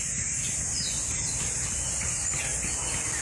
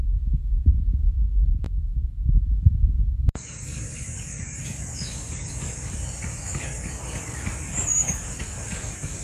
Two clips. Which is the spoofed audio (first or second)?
second